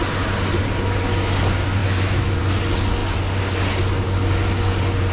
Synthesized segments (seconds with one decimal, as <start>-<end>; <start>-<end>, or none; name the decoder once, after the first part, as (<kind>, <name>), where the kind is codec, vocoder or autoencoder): 1.8-2.4 (autoencoder, DAC-VAE)

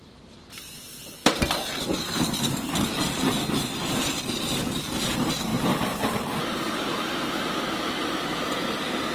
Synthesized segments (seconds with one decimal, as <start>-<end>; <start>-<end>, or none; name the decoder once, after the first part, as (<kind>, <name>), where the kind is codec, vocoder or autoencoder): 0.0-1.2 (vocoder, BigVGAN v2); 1.8-9.1

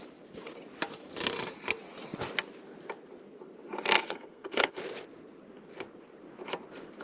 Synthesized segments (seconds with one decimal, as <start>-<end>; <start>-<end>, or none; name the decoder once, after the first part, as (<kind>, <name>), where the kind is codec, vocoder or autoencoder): 4.0-4.8 (codec, SNAC)

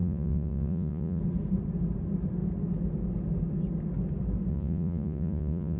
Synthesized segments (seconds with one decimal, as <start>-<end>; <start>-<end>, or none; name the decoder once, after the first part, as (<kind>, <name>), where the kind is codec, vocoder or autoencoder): 0.0-1.2 (vocoder, Vocos); 4.5-5.8

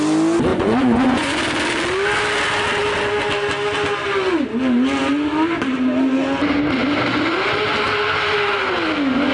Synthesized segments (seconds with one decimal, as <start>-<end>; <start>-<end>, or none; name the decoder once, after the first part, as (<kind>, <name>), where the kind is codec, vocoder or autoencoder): 0.5-1.4 (vocoder, Vocos)

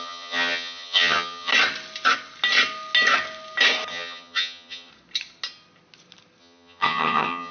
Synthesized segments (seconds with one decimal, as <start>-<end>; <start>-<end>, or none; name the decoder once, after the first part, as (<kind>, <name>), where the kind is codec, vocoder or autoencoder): 0.0-1.5 (vocoder, HiFi-GAN); 3.9-4.9; 6.4-7.5

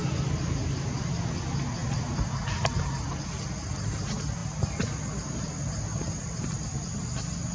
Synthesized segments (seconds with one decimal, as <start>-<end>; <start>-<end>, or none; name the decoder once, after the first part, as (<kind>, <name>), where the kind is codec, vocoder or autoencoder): none